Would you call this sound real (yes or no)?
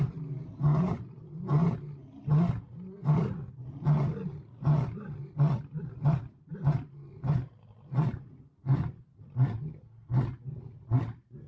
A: yes